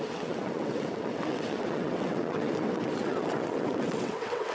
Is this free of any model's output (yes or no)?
no